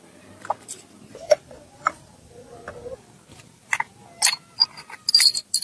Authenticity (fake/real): real